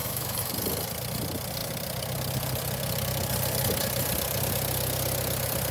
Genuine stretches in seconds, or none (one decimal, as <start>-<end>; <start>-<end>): 0.5-5.7